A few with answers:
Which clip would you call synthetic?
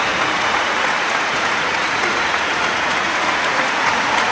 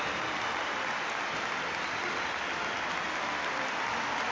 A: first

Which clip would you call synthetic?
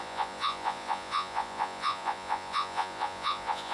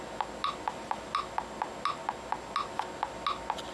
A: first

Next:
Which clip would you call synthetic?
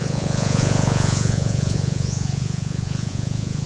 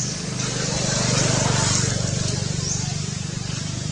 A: first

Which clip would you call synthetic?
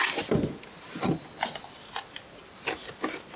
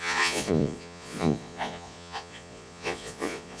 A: second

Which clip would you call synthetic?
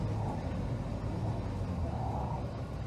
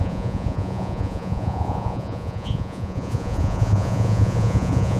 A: second